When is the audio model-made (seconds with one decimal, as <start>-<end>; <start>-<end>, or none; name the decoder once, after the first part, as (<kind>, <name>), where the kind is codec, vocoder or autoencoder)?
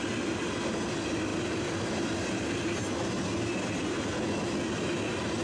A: none